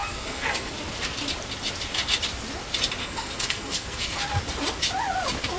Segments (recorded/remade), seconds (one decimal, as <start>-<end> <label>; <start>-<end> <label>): 0.0-0.7 remade; 0.7-3.0 recorded; 3.0-4.2 remade; 4.2-5.6 recorded